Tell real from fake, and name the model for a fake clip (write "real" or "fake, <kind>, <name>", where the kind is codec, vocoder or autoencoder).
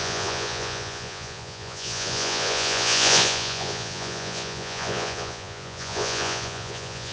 fake, vocoder, Vocos